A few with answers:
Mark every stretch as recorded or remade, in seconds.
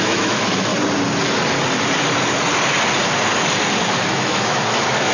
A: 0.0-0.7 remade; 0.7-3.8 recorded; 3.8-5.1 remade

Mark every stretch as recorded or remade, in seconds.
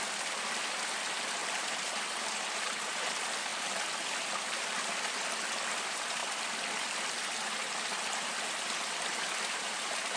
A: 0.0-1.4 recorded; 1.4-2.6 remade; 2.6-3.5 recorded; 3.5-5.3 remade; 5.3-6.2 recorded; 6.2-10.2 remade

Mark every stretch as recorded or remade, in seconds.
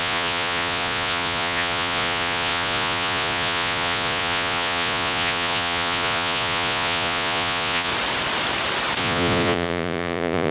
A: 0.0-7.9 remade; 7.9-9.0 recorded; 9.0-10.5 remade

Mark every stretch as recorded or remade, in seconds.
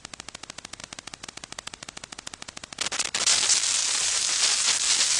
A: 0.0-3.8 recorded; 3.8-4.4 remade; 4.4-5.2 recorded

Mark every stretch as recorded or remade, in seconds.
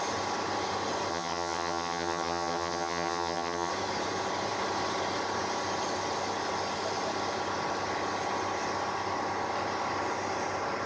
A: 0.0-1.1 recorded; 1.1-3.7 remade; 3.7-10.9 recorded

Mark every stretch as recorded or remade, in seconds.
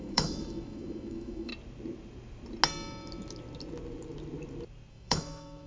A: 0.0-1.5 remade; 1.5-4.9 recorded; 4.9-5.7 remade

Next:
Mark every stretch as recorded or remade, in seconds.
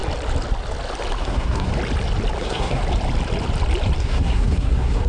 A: 0.0-1.2 recorded; 1.2-1.7 remade; 1.7-2.4 recorded; 2.4-2.8 remade; 2.8-4.0 recorded; 4.0-5.1 remade